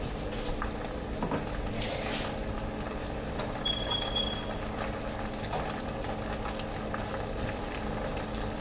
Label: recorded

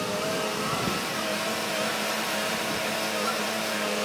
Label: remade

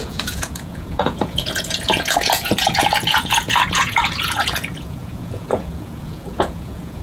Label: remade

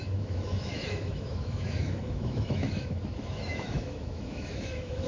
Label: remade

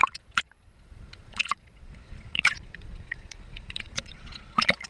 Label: remade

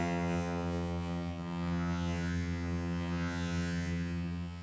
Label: remade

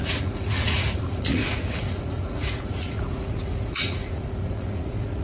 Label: remade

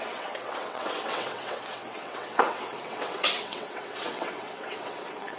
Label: remade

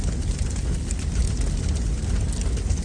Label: recorded